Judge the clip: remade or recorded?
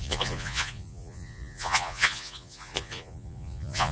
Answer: remade